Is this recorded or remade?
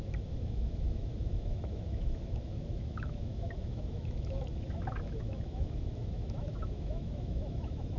remade